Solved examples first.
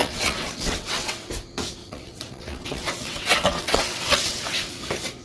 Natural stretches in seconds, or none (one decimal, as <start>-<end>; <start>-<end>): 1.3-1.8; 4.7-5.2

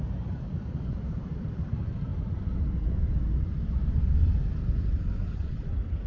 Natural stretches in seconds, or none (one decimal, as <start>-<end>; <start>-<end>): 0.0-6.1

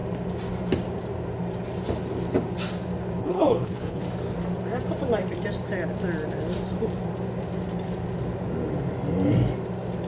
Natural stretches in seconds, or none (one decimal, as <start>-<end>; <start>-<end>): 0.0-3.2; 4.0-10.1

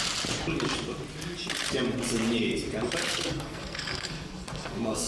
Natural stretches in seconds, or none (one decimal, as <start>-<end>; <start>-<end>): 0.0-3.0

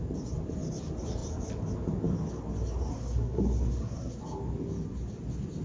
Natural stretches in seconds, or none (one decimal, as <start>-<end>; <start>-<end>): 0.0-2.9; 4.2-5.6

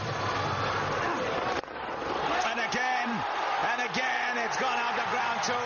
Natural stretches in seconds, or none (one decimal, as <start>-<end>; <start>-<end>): 0.0-5.7

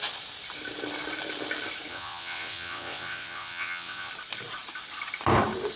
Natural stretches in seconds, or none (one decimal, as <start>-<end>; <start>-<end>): 0.0-1.9; 4.1-5.8

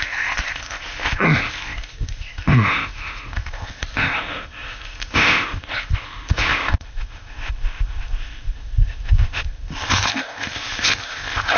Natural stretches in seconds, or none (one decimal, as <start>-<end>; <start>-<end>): none